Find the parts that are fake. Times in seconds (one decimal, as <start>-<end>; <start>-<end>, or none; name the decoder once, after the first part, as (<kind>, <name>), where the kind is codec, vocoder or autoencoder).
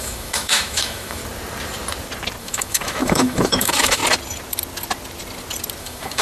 0.0-1.2 (autoencoder, DAC-VAE); 2.4-4.0; 5.8-6.2